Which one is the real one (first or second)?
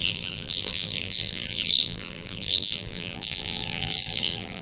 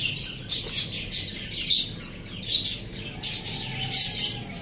second